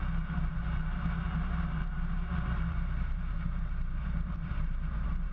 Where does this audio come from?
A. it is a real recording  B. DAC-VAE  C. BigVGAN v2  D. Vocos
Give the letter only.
C